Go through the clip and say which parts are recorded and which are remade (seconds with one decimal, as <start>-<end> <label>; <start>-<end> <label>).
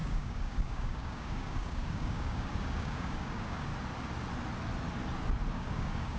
0.0-3.7 remade; 3.7-5.5 recorded; 5.5-6.2 remade